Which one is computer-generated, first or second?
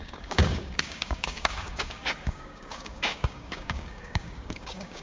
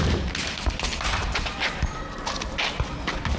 first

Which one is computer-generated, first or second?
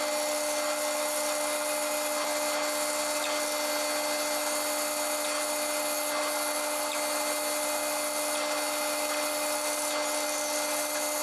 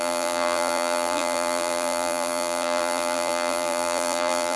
second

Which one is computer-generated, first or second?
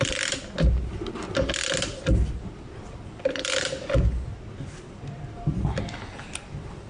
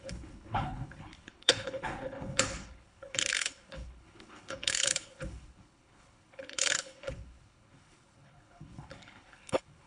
second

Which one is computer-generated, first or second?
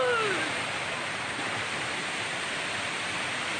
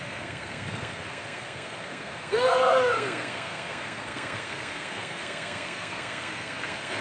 second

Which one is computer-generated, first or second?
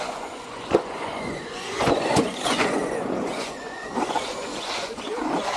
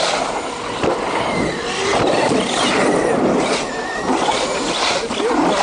first